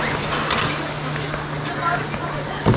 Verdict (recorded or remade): recorded